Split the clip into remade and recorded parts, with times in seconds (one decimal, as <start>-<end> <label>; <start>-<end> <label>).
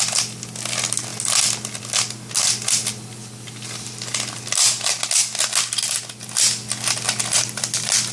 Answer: 0.0-8.1 recorded